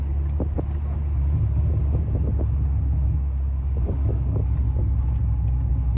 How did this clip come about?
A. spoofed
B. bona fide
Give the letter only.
B